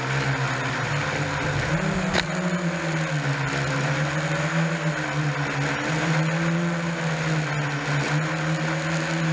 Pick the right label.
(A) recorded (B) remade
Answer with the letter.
A